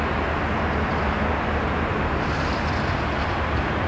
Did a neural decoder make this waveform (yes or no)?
no